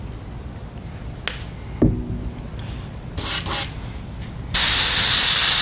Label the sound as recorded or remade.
recorded